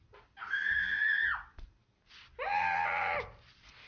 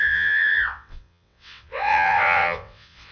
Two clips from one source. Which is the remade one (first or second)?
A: second